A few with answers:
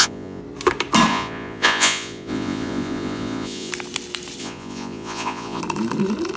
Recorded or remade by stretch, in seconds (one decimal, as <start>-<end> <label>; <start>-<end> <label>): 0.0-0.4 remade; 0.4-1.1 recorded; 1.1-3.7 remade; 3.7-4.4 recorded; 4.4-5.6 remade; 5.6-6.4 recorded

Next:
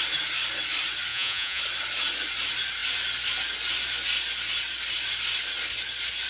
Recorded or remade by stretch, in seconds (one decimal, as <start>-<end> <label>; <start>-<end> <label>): 0.0-1.1 recorded; 1.1-1.6 remade; 1.6-6.3 recorded

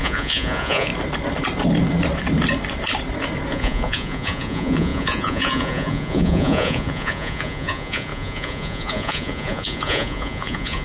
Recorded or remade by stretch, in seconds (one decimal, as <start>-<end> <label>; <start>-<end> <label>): 0.0-0.9 remade; 0.9-3.5 recorded; 3.5-10.8 remade

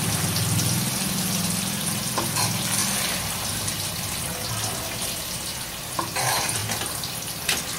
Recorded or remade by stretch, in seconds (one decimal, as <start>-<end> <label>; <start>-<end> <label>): 0.0-7.8 recorded